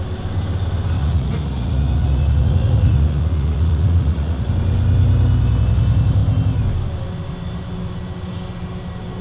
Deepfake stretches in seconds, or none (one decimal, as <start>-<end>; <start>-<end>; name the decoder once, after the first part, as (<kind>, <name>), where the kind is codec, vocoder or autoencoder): 1.0-4.5 (vocoder, Vocos)